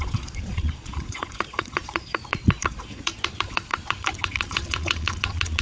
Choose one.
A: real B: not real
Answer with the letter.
B